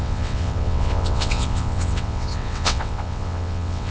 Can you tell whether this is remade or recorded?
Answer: remade